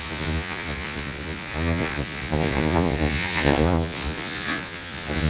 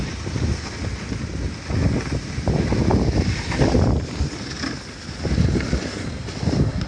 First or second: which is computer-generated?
first